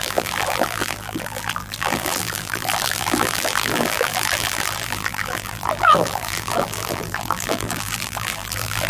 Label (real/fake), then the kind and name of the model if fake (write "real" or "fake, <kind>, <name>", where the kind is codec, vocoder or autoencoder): fake, vocoder, BigVGAN v2